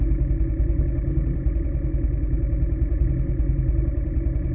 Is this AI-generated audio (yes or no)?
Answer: no